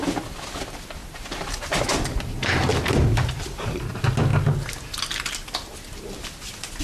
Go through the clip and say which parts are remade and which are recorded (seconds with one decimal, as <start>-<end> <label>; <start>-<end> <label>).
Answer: 0.0-2.7 recorded; 2.7-3.9 remade; 3.9-6.8 recorded